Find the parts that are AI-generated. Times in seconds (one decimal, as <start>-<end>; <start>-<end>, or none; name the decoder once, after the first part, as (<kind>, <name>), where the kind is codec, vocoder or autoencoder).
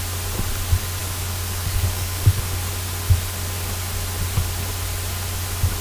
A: 1.0-2.4 (codec, DAC)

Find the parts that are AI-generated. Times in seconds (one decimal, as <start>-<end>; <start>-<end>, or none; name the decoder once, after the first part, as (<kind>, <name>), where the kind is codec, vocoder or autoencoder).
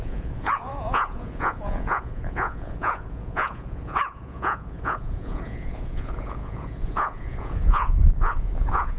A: 0.0-9.0 (vocoder, Vocos)